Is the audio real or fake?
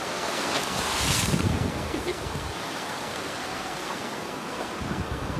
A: fake